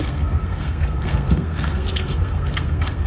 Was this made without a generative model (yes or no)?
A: no